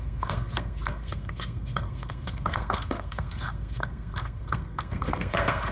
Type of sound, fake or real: fake